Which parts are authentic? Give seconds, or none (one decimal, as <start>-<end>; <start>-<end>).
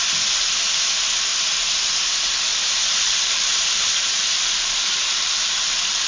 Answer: 0.0-2.5